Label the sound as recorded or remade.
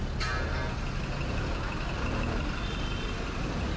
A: recorded